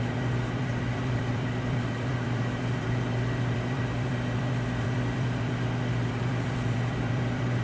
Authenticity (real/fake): fake